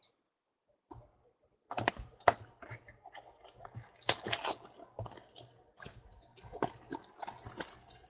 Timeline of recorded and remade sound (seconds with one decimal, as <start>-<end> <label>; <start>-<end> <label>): 0.0-8.1 recorded